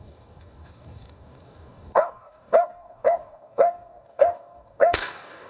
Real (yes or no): no